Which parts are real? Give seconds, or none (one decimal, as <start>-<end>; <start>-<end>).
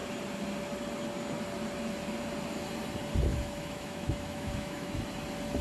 0.0-3.3; 5.0-5.6